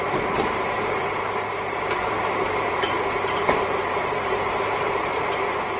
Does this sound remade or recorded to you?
remade